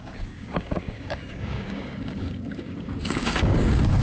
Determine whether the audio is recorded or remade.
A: remade